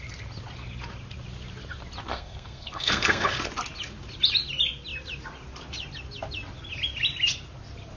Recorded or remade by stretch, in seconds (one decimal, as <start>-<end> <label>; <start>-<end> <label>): 0.0-2.1 recorded; 2.1-3.4 remade; 3.4-8.0 recorded